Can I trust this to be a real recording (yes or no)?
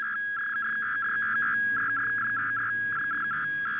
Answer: yes